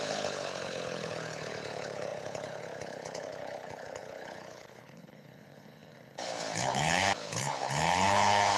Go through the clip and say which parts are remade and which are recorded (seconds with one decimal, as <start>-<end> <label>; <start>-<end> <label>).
0.0-8.6 remade